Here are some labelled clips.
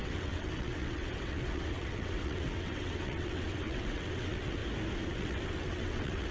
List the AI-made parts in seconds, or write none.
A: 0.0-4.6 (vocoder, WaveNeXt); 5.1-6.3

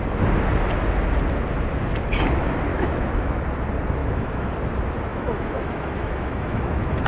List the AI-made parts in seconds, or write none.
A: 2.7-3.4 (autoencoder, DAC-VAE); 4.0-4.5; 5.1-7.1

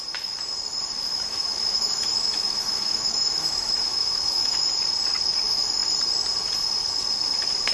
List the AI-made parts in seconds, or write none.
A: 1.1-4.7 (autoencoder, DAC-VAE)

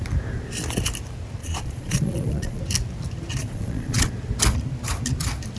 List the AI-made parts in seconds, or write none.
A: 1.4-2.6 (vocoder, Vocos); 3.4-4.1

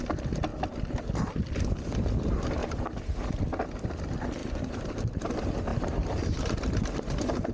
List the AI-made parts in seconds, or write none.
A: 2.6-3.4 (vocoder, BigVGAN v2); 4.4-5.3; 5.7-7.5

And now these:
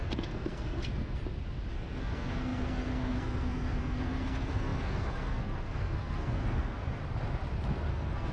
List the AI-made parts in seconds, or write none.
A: 0.0-1.2 (codec, SNAC); 1.7-7.0; 7.9-8.3